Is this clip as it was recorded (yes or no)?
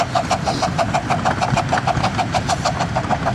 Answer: yes